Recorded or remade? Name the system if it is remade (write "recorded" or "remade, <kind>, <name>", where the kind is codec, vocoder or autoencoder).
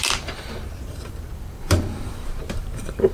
remade, vocoder, BigVGAN v2